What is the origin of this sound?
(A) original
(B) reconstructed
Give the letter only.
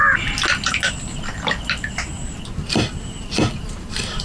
A